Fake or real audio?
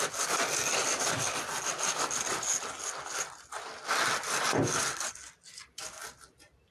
real